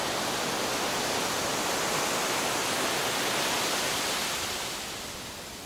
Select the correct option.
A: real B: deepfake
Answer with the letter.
A